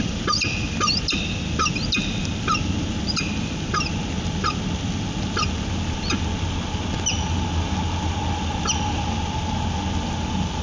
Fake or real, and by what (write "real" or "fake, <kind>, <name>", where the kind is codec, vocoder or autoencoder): real